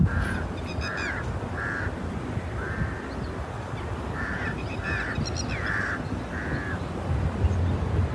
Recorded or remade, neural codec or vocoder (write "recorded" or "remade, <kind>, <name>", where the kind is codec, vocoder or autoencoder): recorded